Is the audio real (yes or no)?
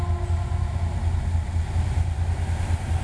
yes